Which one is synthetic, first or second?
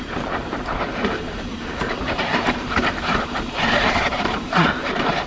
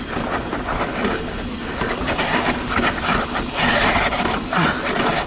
first